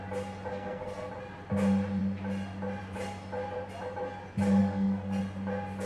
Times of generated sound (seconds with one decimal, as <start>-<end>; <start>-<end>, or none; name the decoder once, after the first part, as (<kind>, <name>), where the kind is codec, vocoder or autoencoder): 0.5-1.1 (codec, SNAC); 4.6-5.2